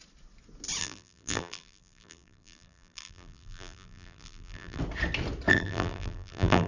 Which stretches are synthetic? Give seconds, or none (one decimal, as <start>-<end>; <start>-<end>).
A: 0.8-4.8; 5.5-6.7